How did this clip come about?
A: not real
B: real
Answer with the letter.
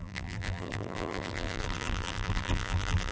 A